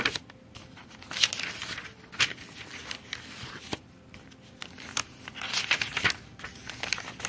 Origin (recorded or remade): recorded